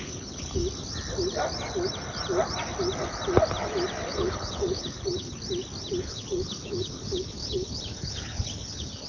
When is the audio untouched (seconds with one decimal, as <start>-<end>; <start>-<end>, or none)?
0.6-4.1; 5.4-6.0